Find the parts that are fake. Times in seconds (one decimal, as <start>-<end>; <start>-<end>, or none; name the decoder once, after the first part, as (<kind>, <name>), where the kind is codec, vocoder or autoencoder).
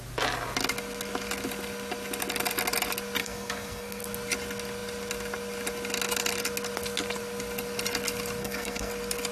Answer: 3.2-4.0 (codec, SNAC); 8.4-8.9